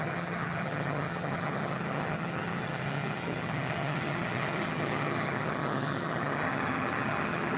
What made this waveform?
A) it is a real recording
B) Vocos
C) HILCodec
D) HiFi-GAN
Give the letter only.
D